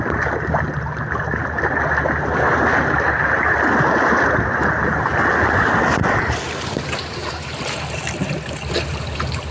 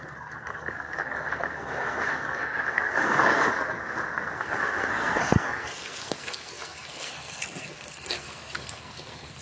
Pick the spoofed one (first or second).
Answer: second